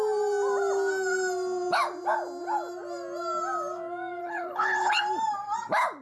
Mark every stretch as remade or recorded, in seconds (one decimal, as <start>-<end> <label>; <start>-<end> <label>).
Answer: 0.0-4.2 recorded; 4.2-5.0 remade; 5.0-6.0 recorded